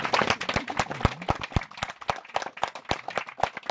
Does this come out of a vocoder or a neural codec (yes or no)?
no